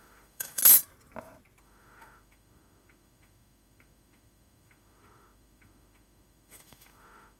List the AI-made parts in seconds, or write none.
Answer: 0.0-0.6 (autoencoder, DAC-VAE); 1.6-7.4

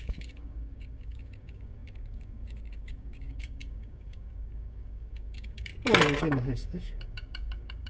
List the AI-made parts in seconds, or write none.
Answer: 0.0-5.7 (codec, DAC); 6.2-7.9

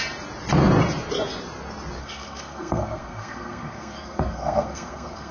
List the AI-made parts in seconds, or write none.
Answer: 2.0-5.3 (codec, SNAC)

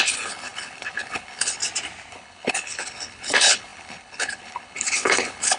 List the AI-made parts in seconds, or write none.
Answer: 0.0-1.6 (codec, HILCodec); 2.1-5.6

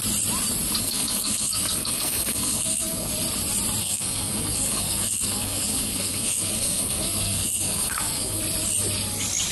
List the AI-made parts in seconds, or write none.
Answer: 0.8-3.1 (codec, SNAC); 3.8-8.4

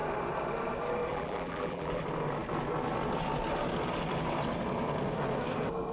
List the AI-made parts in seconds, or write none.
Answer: 1.1-2.0 (vocoder, BigVGAN v2)

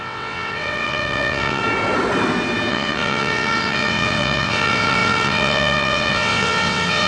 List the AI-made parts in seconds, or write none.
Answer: 0.0-1.6 (vocoder, WaveNeXt); 2.7-7.1

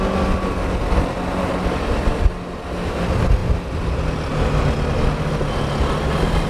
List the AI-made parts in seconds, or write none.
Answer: none